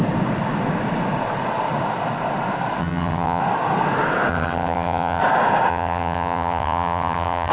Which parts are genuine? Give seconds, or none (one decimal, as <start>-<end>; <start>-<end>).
0.0-2.8; 3.4-4.3; 5.2-5.7